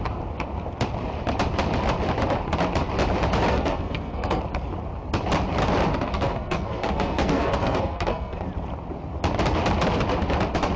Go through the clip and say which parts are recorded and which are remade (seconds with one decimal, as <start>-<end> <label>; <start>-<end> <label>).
0.0-3.5 recorded; 3.5-4.4 remade; 4.4-5.9 recorded; 5.9-8.4 remade; 8.4-10.8 recorded